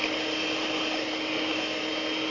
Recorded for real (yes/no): yes